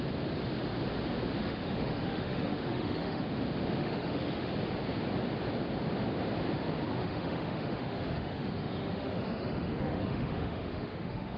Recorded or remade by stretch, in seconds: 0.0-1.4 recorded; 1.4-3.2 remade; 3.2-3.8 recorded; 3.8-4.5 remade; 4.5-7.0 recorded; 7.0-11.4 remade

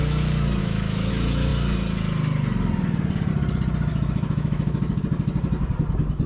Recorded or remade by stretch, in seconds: 0.0-0.6 recorded; 0.6-1.1 remade; 1.1-3.9 recorded; 3.9-5.0 remade; 5.0-6.3 recorded

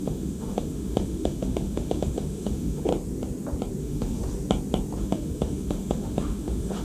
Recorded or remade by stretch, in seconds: 0.0-2.9 remade; 2.9-3.8 recorded; 3.8-4.2 remade; 4.2-5.0 recorded; 5.0-6.8 remade

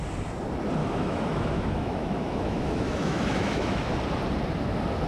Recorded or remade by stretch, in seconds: 0.0-0.8 recorded; 0.8-3.9 remade; 3.9-5.1 recorded

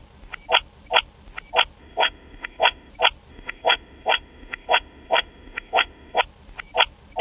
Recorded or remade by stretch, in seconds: 0.0-1.8 recorded; 1.8-2.9 remade; 2.9-3.3 recorded; 3.3-6.2 remade; 6.2-7.2 recorded

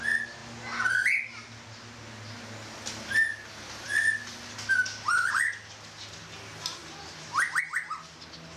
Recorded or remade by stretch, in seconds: 0.0-8.6 recorded